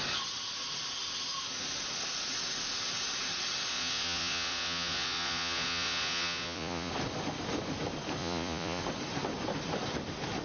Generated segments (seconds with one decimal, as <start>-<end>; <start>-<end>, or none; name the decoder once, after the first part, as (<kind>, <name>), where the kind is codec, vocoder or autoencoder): 3.7-6.9 (vocoder, Vocos); 8.2-8.8

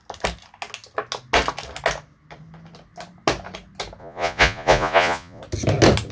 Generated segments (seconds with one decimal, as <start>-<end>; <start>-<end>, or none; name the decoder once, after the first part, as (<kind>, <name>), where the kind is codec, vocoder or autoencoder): 4.0-5.4 (vocoder, Vocos)